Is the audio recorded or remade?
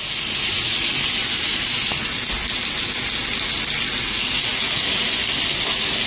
recorded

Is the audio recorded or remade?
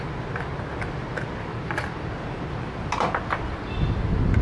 recorded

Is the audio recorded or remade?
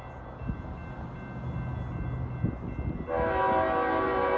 recorded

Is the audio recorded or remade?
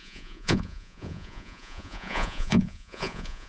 remade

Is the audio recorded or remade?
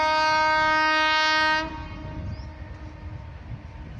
recorded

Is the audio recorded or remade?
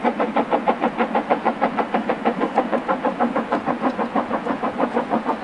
remade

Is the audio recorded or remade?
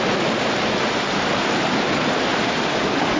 recorded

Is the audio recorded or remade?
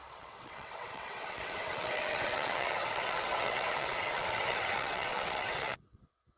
remade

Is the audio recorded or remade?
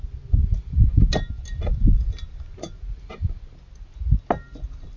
recorded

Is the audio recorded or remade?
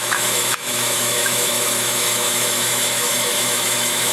remade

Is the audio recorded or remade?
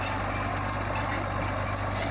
recorded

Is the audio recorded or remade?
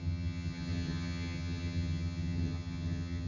remade